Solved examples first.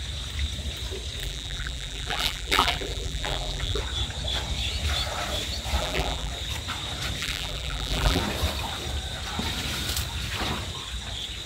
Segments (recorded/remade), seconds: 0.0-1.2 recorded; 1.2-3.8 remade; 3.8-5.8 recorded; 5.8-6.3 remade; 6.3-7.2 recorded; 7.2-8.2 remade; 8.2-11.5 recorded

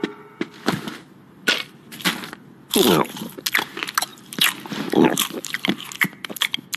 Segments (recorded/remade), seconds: 0.0-1.4 recorded; 1.4-2.1 remade; 2.1-4.1 recorded; 4.1-5.9 remade; 5.9-6.8 recorded

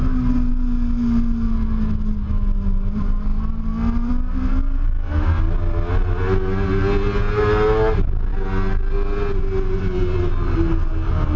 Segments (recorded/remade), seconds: 0.0-11.4 recorded

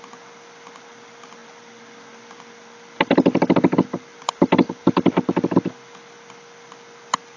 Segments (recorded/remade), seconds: 0.0-7.4 recorded

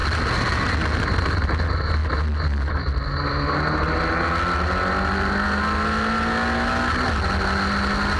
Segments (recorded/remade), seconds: 0.0-8.2 recorded

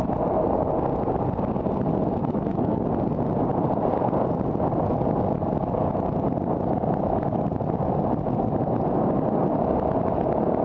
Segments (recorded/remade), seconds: 0.0-2.2 recorded; 2.2-2.8 remade; 2.8-10.6 recorded

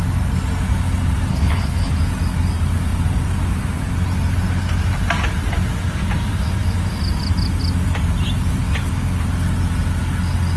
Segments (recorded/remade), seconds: 0.0-1.3 recorded; 1.3-1.9 remade; 1.9-10.6 recorded